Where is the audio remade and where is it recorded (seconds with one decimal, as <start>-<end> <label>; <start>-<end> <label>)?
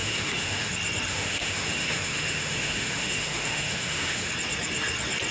0.0-0.7 remade; 0.7-1.1 recorded; 1.1-4.3 remade; 4.3-5.3 recorded